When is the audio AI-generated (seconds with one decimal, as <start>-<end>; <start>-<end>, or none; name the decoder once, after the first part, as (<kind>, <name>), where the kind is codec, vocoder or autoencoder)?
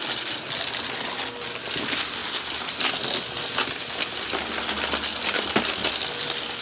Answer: none